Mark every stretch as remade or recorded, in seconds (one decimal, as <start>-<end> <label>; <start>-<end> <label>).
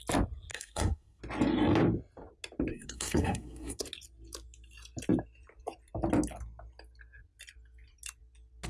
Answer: 0.0-0.5 recorded; 0.5-1.2 remade; 1.2-2.7 recorded; 2.7-3.8 remade; 3.8-8.7 recorded